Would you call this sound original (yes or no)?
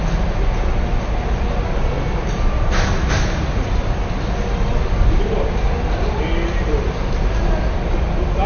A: yes